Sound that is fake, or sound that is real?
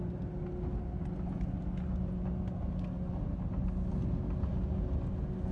real